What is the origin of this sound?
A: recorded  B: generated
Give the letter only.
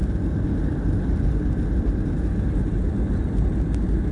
A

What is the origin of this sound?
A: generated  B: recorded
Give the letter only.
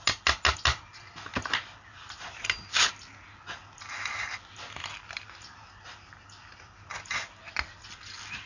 B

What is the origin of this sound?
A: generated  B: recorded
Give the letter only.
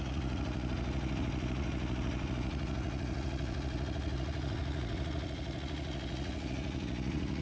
A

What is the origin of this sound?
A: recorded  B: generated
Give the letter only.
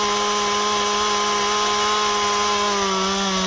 A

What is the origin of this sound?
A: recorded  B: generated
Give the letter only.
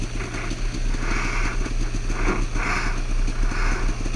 A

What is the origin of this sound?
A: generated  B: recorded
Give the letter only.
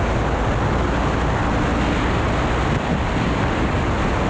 B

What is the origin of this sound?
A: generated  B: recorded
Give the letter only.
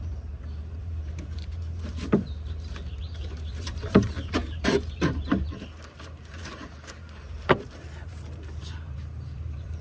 A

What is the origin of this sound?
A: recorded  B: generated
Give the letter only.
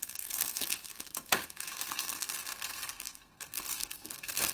B